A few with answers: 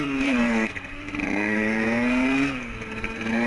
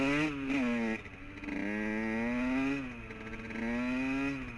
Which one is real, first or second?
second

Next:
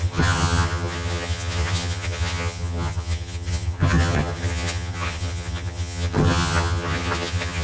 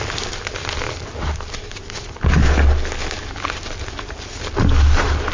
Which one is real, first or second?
second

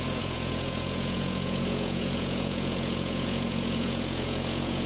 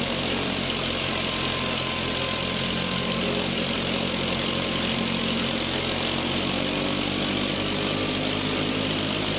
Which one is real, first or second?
second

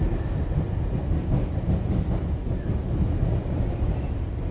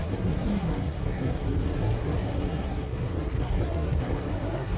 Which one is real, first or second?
first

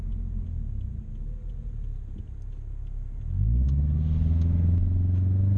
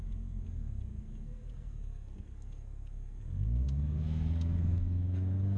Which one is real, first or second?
first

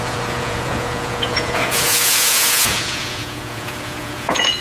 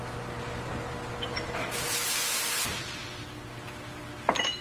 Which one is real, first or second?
second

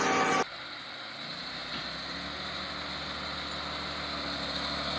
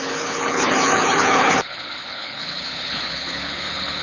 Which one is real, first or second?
first